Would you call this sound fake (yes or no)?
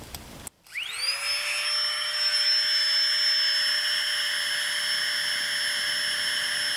no